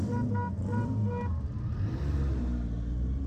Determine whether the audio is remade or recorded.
recorded